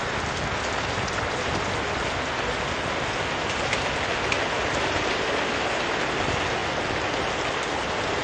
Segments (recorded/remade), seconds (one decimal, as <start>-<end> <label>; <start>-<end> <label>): 0.0-8.2 recorded